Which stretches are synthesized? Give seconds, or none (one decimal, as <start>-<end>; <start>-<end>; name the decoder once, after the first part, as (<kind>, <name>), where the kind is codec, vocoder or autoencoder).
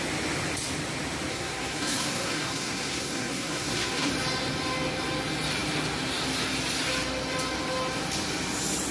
1.3-4.1 (codec, SNAC)